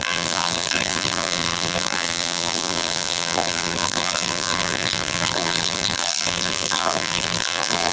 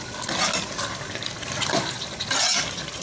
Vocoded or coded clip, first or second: first